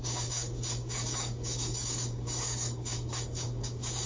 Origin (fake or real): fake